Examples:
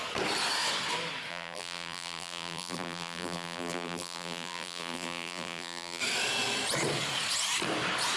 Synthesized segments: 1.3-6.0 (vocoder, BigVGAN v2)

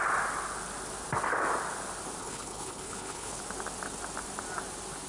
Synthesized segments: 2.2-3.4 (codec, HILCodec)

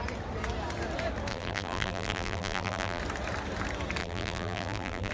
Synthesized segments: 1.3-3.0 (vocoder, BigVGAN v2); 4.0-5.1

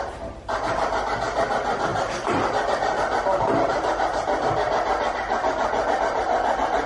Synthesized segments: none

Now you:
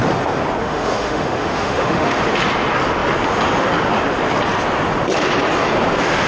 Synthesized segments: 0.6-2.2 (autoencoder, DAC-VAE)

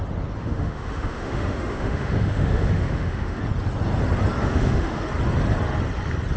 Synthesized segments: 0.4-3.4 (autoencoder, DAC-VAE); 4.4-5.0